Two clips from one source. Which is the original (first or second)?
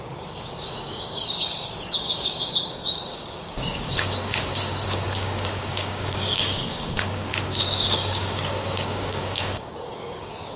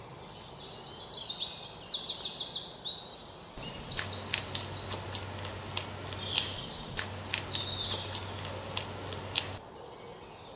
second